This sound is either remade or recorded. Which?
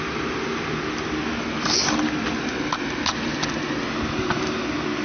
recorded